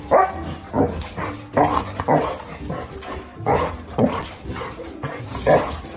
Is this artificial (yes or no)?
no